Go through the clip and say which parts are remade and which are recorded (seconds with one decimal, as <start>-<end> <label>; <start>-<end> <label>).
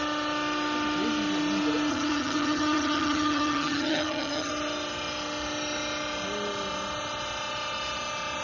0.0-1.9 recorded; 1.9-4.5 remade; 4.5-8.4 recorded